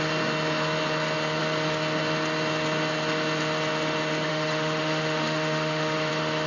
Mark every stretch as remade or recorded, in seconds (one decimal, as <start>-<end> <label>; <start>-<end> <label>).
0.0-4.3 recorded; 4.3-6.1 remade; 6.1-6.5 recorded

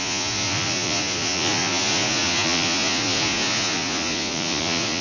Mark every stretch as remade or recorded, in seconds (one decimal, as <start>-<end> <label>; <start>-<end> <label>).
0.0-5.0 remade

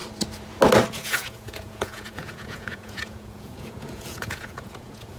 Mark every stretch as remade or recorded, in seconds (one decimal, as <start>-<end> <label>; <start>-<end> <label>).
0.0-0.9 recorded; 0.9-5.2 remade

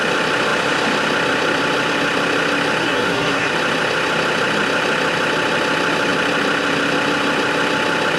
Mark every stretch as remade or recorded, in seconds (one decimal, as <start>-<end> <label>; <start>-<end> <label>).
0.0-2.8 recorded; 2.8-3.5 remade; 3.5-8.2 recorded

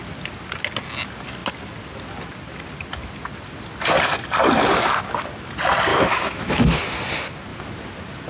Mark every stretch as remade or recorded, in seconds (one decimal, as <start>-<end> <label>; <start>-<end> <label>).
0.0-5.9 recorded; 5.9-6.8 remade; 6.8-8.3 recorded